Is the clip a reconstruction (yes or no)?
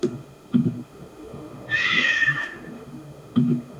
yes